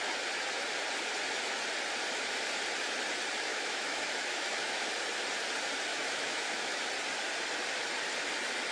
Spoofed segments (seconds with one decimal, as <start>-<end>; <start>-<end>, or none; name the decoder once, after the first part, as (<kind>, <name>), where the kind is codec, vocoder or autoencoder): 3.5-4.9 (autoencoder, DAC-VAE); 5.9-6.8